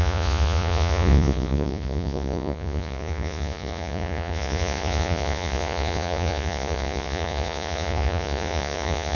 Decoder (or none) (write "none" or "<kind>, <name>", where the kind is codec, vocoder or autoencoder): vocoder, Vocos